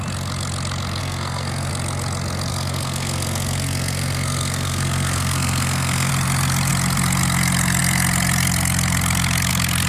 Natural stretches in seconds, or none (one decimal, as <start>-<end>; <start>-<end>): 0.0-1.0; 1.7-2.5; 6.1-9.9